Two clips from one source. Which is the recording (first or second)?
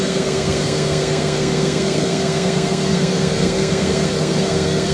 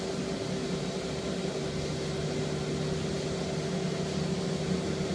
second